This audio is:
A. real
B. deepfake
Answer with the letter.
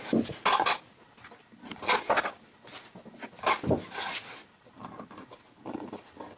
A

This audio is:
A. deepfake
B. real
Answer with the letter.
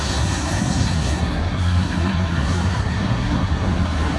A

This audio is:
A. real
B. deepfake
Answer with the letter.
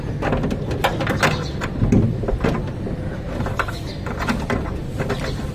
A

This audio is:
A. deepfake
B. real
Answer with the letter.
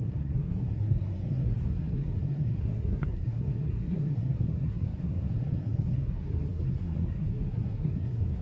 A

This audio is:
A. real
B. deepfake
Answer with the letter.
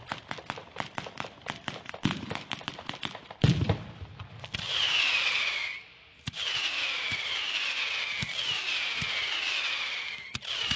A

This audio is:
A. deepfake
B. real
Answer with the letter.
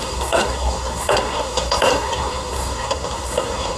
A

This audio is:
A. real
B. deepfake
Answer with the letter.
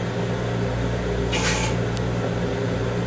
A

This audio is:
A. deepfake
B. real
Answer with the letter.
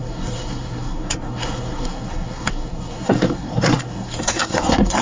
A